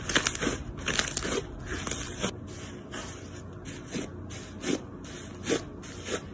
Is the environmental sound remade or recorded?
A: recorded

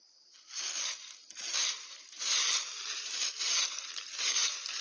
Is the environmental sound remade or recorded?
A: recorded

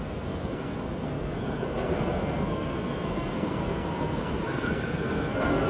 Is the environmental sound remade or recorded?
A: remade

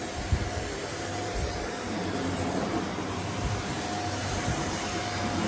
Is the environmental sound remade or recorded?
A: remade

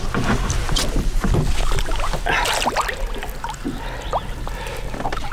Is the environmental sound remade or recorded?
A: recorded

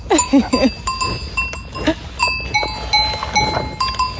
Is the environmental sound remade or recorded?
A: recorded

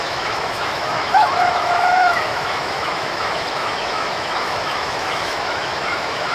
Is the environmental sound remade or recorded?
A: remade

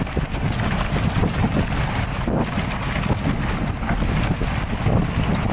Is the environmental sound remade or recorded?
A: recorded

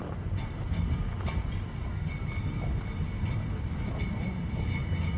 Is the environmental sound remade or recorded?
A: recorded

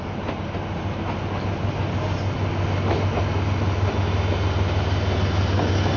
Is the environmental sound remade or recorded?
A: recorded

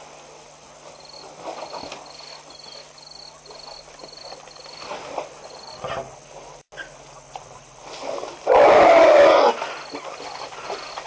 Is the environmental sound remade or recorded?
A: recorded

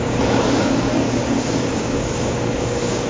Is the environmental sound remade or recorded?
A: remade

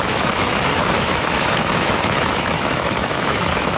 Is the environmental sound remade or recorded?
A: remade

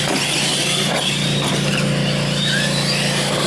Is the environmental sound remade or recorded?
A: recorded